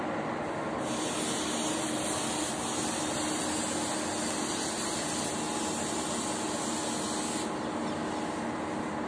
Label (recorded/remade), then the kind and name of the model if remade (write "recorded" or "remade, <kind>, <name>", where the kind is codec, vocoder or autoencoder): recorded